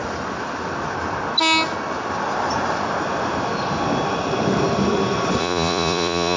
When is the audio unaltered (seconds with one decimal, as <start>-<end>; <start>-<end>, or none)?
0.0-5.4